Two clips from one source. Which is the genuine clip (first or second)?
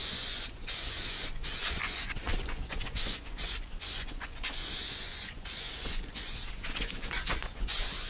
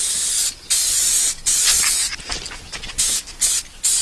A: second